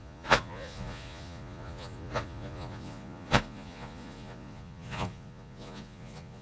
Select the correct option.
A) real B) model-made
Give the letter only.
B